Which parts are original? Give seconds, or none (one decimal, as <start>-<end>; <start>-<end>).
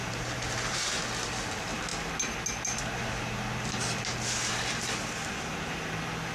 0.9-6.3